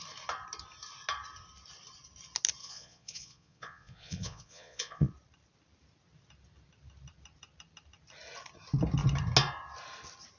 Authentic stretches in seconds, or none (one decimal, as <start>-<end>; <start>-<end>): 0.0-2.6; 5.1-10.4